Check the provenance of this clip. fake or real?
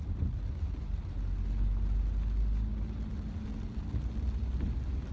real